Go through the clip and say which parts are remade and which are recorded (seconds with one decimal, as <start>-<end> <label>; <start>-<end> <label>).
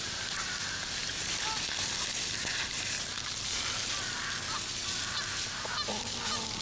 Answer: 0.0-6.6 recorded